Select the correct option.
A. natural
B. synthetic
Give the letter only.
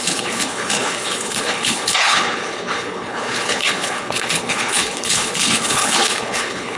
B